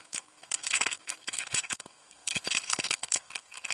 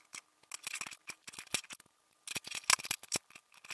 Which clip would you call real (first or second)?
second